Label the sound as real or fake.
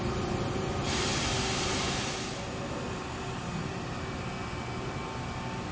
real